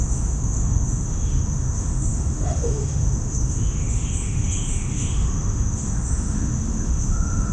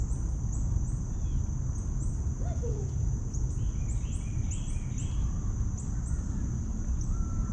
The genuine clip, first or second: second